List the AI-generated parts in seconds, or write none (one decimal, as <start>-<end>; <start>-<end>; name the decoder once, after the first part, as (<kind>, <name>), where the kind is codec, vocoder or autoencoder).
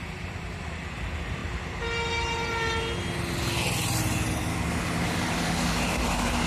4.5-6.5 (codec, DAC)